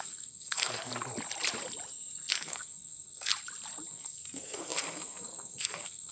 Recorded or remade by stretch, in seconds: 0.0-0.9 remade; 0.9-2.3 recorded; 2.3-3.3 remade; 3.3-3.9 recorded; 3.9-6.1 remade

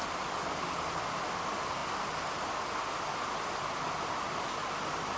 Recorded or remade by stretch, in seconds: 0.0-5.2 recorded

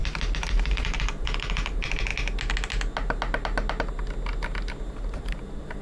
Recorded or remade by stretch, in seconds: 0.0-0.5 recorded; 0.5-2.1 remade; 2.1-4.9 recorded; 4.9-5.8 remade

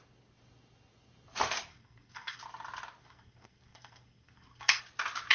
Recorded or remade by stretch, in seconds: 0.0-1.7 recorded; 1.7-2.4 remade; 2.4-3.0 recorded; 3.0-4.8 remade; 4.8-5.3 recorded

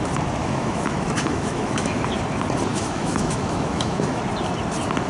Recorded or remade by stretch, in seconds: 0.0-0.4 recorded; 0.4-2.0 remade; 2.0-2.7 recorded; 2.7-4.2 remade; 4.2-5.1 recorded

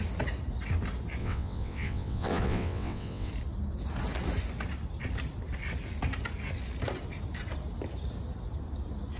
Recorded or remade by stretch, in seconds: 0.0-1.2 recorded; 1.2-3.3 remade; 3.3-9.2 recorded